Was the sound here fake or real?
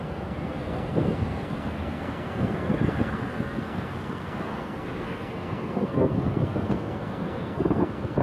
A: fake